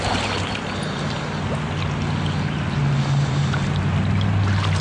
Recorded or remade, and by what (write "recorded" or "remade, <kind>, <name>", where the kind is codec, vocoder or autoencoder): recorded